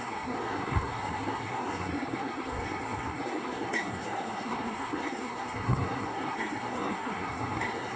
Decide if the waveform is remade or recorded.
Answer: remade